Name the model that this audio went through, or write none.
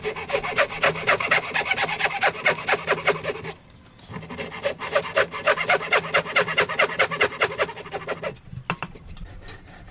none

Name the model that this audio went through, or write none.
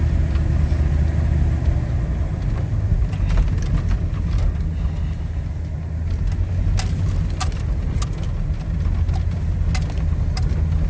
none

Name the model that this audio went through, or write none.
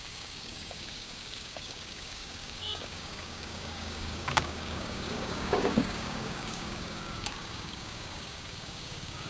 codec, DAC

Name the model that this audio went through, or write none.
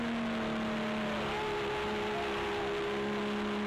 none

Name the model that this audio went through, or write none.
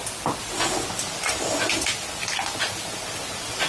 none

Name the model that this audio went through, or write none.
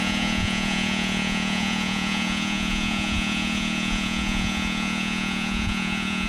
vocoder, Vocos